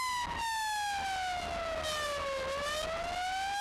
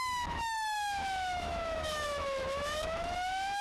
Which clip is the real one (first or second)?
first